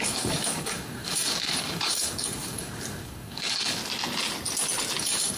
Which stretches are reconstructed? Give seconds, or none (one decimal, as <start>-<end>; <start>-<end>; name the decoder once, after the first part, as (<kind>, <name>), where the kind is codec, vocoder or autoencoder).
0.0-3.8 (codec, DAC); 5.0-5.4